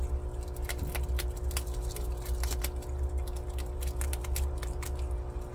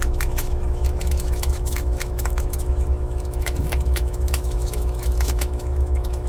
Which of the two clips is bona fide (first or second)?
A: first